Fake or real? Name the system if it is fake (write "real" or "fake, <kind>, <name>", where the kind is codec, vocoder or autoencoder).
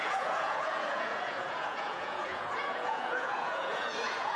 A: fake, vocoder, Vocos